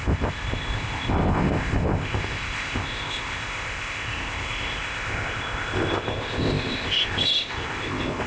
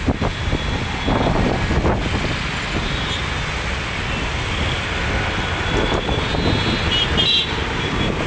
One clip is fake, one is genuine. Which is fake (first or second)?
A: first